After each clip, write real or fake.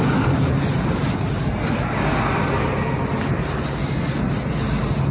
real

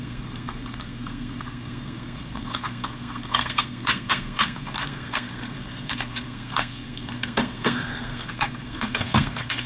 fake